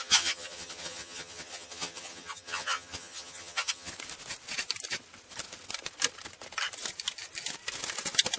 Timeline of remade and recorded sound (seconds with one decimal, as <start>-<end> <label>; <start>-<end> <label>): 0.0-3.9 remade; 3.9-8.4 recorded